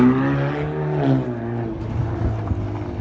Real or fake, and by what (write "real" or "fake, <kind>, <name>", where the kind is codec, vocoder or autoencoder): real